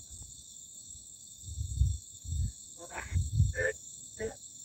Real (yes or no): no